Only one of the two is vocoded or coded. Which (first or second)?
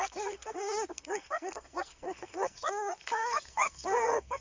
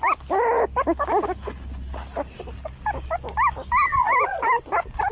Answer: first